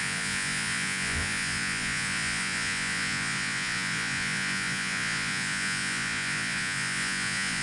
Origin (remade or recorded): remade